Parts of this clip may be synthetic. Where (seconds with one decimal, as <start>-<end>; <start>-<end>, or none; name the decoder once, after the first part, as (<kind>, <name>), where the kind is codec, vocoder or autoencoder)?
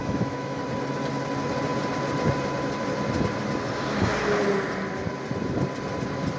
0.0-0.6 (autoencoder, DAC-VAE)